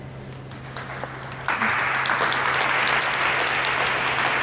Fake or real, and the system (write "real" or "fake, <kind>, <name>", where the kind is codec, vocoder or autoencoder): real